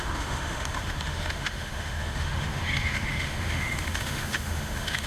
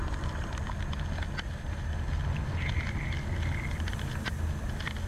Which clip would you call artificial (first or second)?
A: first